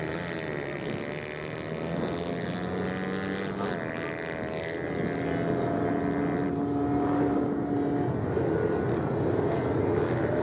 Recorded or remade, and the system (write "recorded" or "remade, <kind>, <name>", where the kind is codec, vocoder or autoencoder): recorded